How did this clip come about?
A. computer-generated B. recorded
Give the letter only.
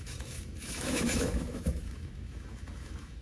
A